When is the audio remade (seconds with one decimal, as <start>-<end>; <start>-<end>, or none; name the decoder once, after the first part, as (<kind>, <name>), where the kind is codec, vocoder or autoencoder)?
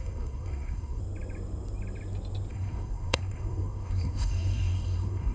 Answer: 0.0-1.0 (codec, SNAC); 2.5-5.3